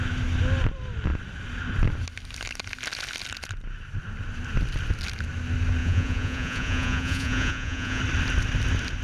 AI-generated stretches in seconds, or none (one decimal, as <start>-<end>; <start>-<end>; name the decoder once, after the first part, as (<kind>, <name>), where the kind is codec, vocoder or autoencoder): 5.8-8.0 (vocoder, Vocos)